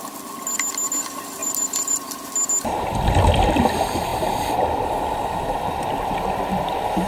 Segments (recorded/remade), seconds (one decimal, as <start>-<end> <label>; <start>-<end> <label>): 0.0-1.4 recorded; 1.4-2.3 remade; 2.3-4.1 recorded; 4.1-6.5 remade; 6.5-7.1 recorded

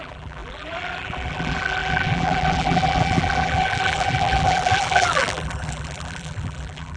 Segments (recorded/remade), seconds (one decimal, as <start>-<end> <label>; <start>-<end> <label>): 0.0-7.0 remade